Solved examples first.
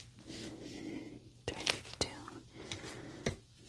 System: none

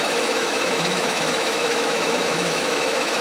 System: autoencoder, DAC-VAE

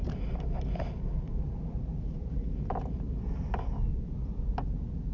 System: none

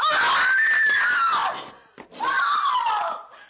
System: none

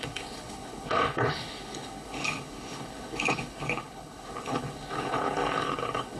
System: codec, HILCodec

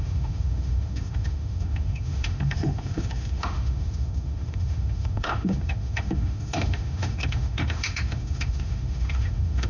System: autoencoder, DAC-VAE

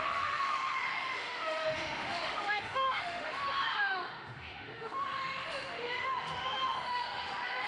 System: autoencoder, DAC-VAE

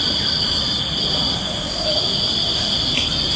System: none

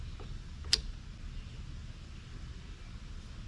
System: none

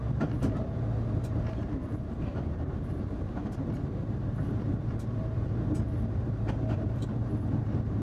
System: vocoder, BigVGAN v2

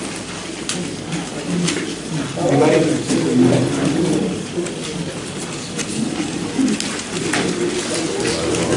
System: none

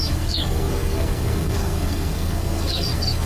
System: codec, SNAC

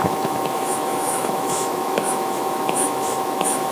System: autoencoder, DAC-VAE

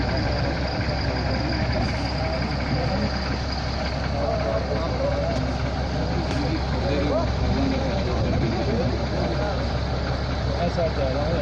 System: none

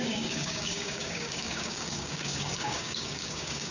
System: codec, DAC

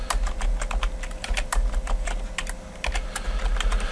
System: none